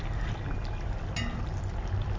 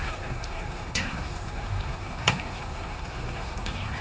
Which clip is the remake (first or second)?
second